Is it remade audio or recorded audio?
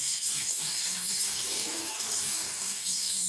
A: remade